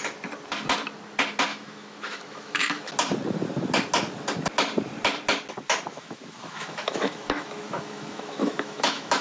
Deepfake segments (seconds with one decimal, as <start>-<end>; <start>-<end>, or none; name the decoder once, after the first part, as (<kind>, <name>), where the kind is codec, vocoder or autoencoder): 1.5-2.9 (autoencoder, DAC-VAE); 5.9-9.2